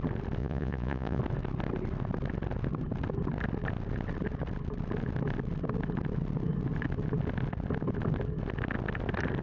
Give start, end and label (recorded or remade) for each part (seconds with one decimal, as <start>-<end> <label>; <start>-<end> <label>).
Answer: 0.0-0.4 recorded; 0.4-1.2 remade; 1.2-9.4 recorded